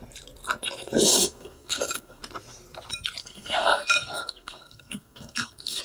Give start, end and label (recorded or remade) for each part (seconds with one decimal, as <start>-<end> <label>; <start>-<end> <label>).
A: 0.0-1.1 recorded; 1.1-2.2 remade; 2.2-3.2 recorded; 3.2-5.8 remade